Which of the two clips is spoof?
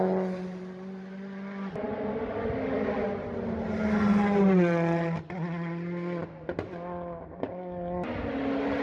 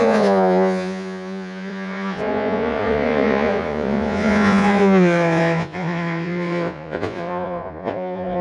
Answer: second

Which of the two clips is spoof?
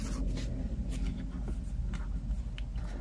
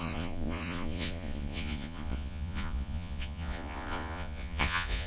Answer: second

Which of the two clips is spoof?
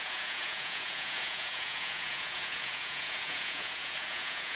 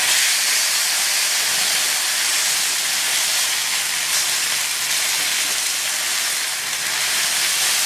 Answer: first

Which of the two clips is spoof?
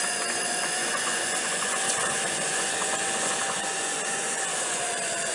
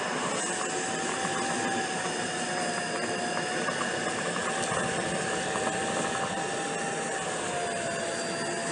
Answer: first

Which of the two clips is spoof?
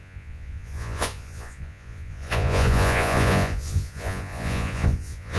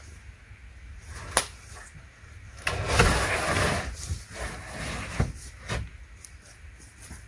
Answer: first